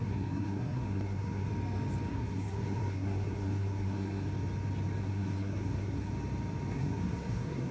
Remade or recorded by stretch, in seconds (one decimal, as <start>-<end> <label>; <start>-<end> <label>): 0.0-1.5 remade; 1.5-2.1 recorded; 2.1-4.3 remade; 4.3-5.0 recorded; 5.0-6.1 remade; 6.1-6.7 recorded; 6.7-7.7 remade